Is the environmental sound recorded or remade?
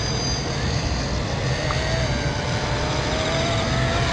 recorded